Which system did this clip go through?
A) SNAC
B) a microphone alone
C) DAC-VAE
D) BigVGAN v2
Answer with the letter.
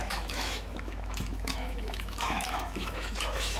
C